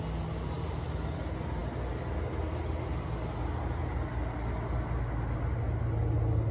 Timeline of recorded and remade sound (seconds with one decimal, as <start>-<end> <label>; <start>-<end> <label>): 0.0-6.5 recorded